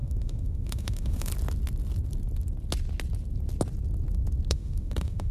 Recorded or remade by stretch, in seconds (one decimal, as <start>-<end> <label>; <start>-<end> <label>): 0.0-1.3 remade; 1.3-4.5 recorded; 4.5-5.3 remade